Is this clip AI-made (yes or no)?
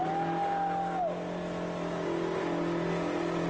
no